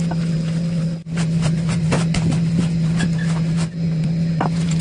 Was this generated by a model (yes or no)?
no